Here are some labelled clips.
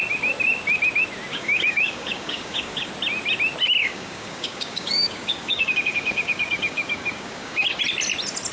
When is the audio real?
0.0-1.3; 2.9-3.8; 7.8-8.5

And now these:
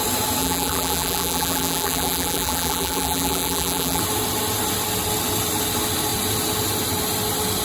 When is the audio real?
0.0-0.4; 4.0-7.6

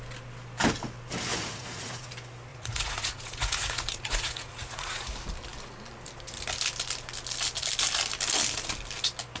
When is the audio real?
0.0-1.3; 2.1-2.5; 5.1-9.4

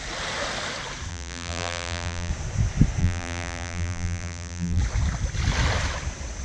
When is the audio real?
0.0-1.1; 2.3-3.0; 4.8-6.4